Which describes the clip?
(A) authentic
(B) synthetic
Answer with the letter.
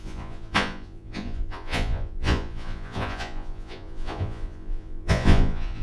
B